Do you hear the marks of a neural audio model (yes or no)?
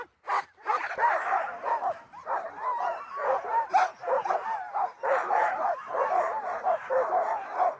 yes